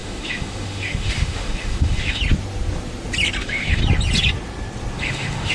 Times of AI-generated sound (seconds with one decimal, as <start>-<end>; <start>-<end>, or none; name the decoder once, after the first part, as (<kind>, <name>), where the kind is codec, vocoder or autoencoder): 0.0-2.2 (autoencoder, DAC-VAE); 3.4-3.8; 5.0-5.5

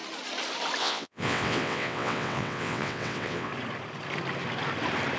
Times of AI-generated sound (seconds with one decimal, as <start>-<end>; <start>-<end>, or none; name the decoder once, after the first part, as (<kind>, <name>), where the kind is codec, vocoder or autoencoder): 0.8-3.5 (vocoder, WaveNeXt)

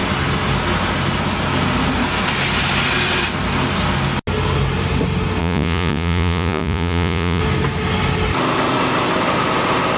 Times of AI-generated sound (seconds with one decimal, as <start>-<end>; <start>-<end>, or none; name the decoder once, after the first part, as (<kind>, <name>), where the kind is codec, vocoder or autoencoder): 5.4-7.4 (vocoder, Vocos)